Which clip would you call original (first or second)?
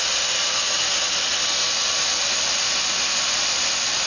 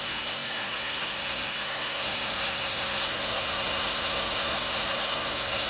first